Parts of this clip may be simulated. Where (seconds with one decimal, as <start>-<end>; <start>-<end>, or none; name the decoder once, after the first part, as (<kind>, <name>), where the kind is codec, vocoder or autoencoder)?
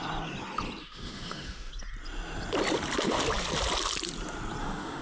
0.8-1.7 (autoencoder, DAC-VAE); 4.6-5.0